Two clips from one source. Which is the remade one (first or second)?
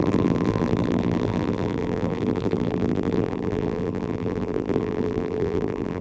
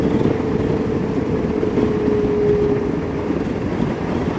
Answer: first